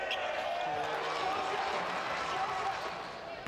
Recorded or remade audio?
recorded